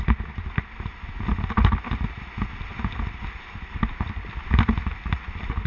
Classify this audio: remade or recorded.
recorded